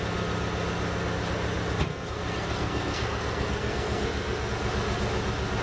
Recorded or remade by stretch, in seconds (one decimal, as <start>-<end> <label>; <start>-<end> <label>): 0.0-1.9 recorded; 1.9-4.5 remade; 4.5-5.6 recorded